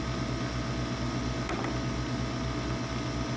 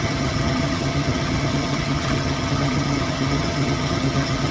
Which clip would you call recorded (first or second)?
first